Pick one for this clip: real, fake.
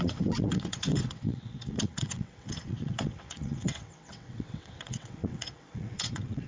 fake